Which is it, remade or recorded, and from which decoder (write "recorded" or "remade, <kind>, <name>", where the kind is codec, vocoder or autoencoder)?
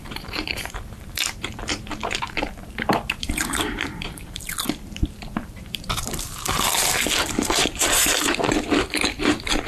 remade, vocoder, BigVGAN v2